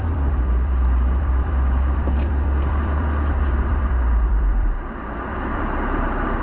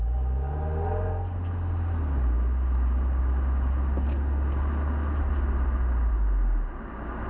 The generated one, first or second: first